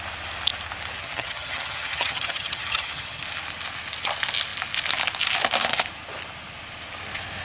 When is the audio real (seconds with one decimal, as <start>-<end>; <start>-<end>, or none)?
0.0-1.0; 3.2-7.4